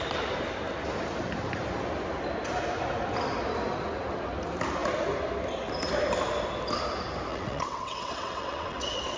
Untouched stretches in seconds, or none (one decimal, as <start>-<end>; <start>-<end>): 0.0-7.3